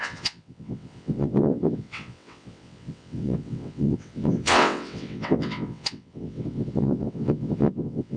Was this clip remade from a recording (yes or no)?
yes